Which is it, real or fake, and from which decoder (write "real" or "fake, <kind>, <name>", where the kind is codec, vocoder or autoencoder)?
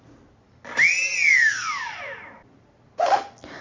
real